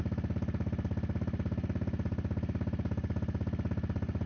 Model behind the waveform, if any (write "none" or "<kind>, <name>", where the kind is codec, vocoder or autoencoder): none